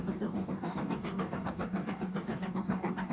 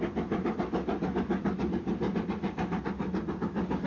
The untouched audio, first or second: second